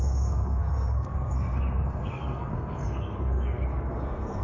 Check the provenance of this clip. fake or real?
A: fake